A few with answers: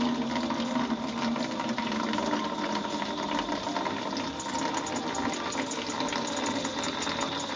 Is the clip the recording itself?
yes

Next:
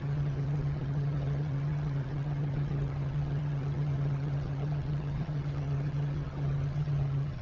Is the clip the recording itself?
no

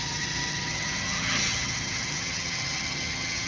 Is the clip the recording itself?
no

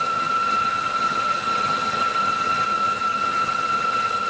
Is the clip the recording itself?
no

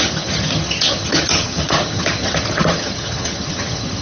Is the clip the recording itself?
no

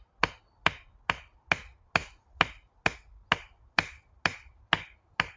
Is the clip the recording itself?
yes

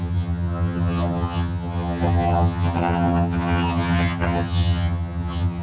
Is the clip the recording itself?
no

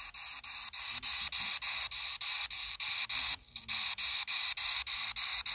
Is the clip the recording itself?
yes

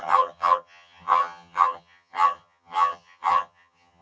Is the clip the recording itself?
no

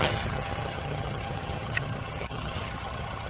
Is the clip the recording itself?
no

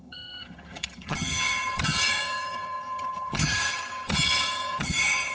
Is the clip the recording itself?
no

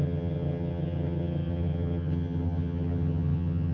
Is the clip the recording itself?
no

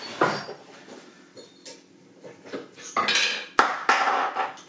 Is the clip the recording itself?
yes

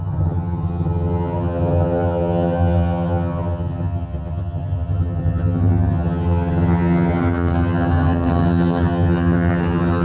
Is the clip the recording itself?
no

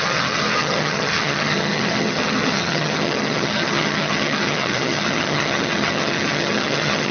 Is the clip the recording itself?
no